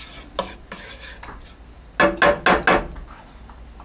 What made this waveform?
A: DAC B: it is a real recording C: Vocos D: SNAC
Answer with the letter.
B